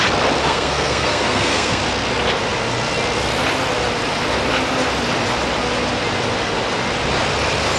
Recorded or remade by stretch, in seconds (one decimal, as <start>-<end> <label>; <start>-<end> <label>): 0.0-0.4 recorded; 0.4-1.8 remade; 1.8-7.8 recorded